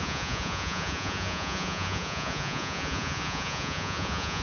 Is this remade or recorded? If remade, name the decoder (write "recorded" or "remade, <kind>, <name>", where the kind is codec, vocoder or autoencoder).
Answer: remade, vocoder, Vocos